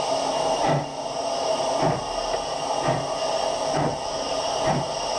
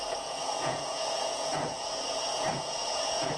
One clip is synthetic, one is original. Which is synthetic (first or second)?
second